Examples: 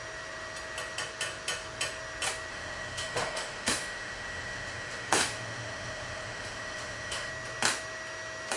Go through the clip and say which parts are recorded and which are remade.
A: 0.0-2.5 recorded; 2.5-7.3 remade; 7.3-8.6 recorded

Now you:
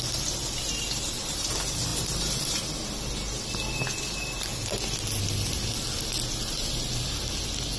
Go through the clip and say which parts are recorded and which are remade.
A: 0.0-7.8 recorded

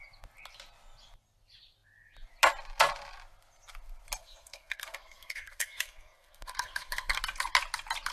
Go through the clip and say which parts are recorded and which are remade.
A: 0.0-4.2 recorded; 4.2-7.2 remade; 7.2-8.1 recorded

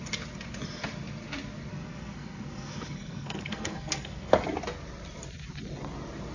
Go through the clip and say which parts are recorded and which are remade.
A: 0.0-1.7 recorded; 1.7-4.3 remade; 4.3-6.3 recorded

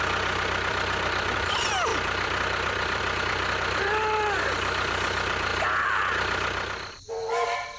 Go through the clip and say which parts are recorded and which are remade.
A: 0.0-5.5 remade; 5.5-7.1 recorded; 7.1-7.8 remade

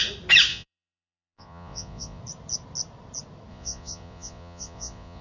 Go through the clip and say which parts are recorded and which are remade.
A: 0.0-0.5 recorded; 0.5-2.2 remade; 2.2-3.5 recorded; 3.5-5.2 remade